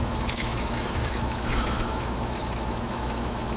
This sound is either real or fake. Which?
fake